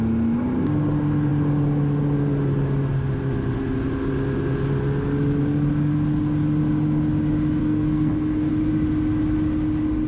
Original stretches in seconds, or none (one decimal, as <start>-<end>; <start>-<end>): 0.0-7.6; 8.5-10.1